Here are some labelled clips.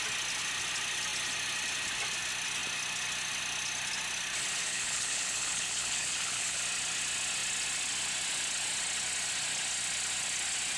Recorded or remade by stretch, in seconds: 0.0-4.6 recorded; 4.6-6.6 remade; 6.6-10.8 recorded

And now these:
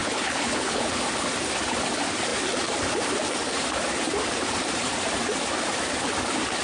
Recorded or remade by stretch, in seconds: 0.0-0.9 remade; 0.9-6.6 recorded

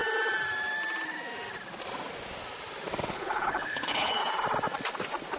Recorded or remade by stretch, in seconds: 0.0-3.1 recorded; 3.1-4.2 remade; 4.2-5.4 recorded

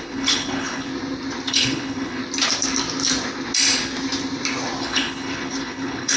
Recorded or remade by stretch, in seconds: 0.0-0.9 remade; 0.9-1.5 recorded; 1.5-2.2 remade; 2.2-4.8 recorded; 4.8-6.2 remade

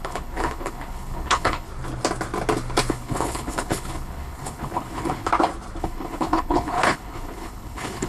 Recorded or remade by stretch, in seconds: 0.0-1.7 remade; 1.7-2.9 recorded; 2.9-5.3 remade; 5.3-5.8 recorded; 5.8-8.1 remade

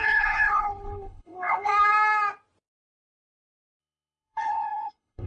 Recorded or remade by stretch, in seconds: 0.0-1.7 remade; 1.7-3.8 recorded; 3.8-5.3 remade